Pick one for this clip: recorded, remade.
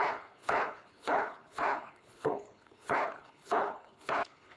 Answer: remade